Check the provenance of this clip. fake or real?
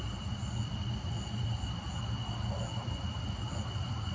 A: real